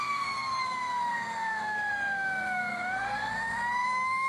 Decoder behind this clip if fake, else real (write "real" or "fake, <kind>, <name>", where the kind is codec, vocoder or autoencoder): fake, codec, SNAC